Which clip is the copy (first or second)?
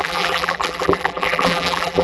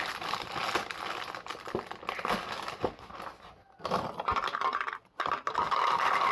first